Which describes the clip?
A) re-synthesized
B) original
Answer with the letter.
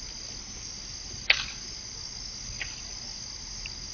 B